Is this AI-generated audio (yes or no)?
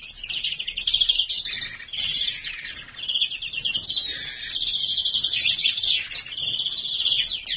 no